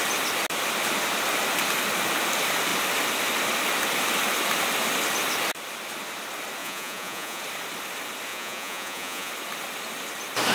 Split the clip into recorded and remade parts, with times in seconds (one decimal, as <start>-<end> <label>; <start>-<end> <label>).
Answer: 0.0-6.6 recorded; 6.6-7.4 remade; 7.4-8.3 recorded; 8.3-9.3 remade; 9.3-10.5 recorded